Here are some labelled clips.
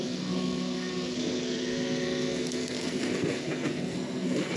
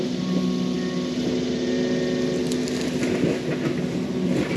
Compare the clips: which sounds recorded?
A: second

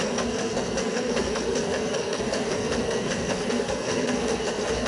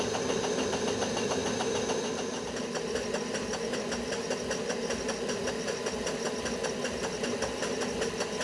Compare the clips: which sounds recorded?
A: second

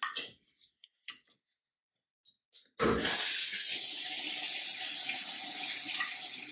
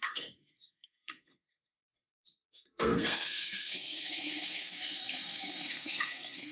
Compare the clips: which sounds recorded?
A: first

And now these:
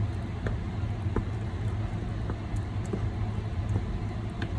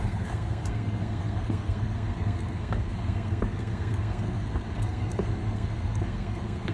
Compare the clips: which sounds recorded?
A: first